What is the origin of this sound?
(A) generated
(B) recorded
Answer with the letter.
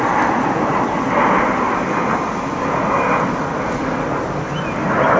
B